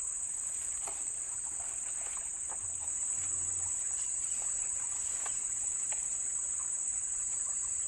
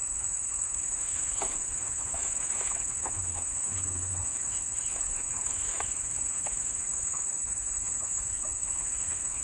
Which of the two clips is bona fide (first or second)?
first